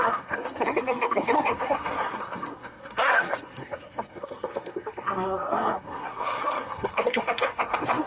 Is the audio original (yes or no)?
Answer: no